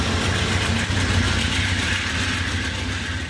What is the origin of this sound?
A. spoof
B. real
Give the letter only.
B